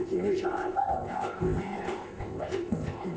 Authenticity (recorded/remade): remade